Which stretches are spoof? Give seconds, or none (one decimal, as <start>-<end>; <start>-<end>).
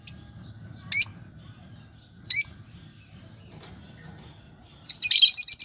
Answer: 1.1-3.7; 4.7-5.6